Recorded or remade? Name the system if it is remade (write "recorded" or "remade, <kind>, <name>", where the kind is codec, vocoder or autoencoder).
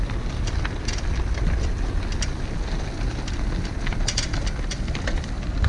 recorded